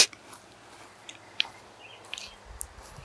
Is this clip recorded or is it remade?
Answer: recorded